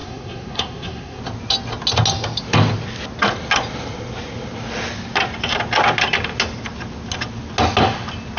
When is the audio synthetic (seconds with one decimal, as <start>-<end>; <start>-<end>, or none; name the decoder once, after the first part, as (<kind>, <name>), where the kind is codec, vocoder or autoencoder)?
0.0-1.2 (codec, SNAC)